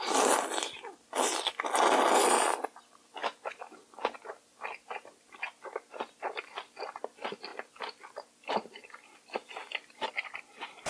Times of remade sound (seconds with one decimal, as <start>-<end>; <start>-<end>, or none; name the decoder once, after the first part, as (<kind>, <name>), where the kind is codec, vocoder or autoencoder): 7.5-8.0 (vocoder, BigVGAN v2); 9.6-10.9